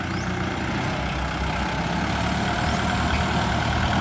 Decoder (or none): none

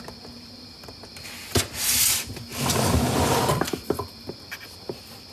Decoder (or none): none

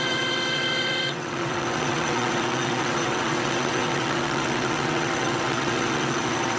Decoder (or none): vocoder, WaveNeXt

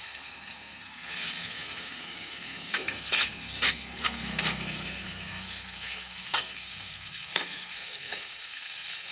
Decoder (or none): codec, SNAC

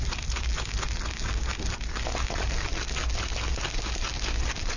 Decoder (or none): none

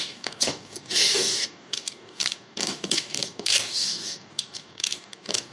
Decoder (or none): codec, DAC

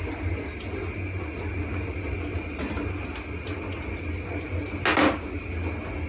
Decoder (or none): none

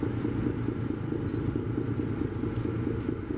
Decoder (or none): none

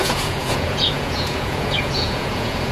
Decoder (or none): vocoder, Vocos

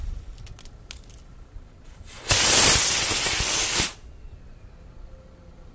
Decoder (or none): none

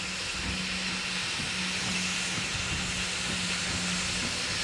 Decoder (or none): none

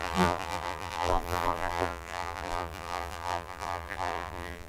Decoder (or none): vocoder, BigVGAN v2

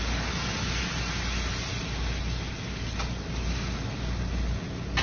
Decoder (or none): none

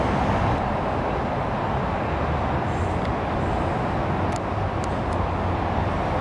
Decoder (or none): none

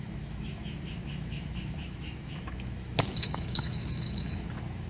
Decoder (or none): autoencoder, DAC-VAE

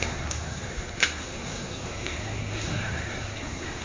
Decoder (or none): codec, SNAC